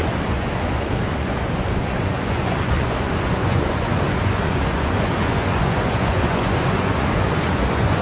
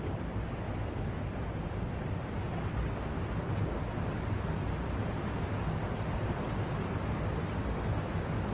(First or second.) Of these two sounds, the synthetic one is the first